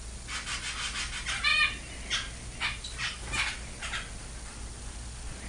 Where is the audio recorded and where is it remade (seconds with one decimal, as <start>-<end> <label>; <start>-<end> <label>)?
0.0-5.5 recorded